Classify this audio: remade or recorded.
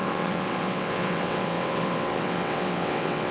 remade